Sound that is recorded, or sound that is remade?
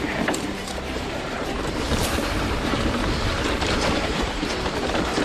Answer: remade